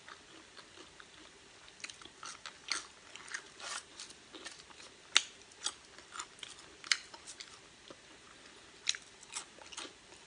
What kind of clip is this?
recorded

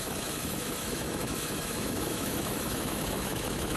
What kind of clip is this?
remade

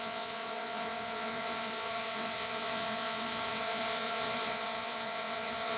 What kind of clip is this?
remade